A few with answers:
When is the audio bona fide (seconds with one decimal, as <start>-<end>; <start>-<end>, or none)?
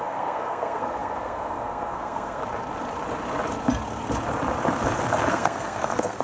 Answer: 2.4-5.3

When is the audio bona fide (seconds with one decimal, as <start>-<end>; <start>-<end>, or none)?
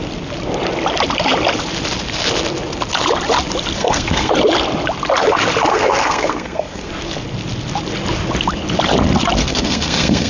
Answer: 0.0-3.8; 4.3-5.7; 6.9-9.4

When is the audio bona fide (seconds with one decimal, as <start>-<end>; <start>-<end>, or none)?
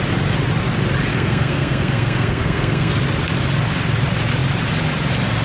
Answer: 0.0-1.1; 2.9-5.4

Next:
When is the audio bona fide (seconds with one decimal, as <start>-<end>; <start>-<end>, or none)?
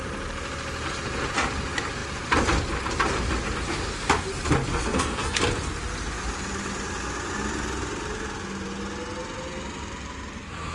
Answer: 0.0-4.7; 5.4-10.7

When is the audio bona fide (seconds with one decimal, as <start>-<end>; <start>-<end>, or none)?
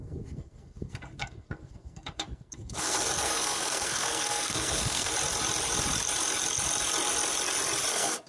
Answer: 5.1-7.9